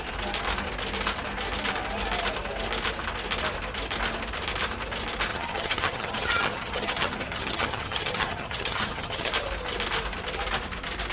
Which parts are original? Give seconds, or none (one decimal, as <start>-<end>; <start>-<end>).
0.0-5.3; 9.3-11.1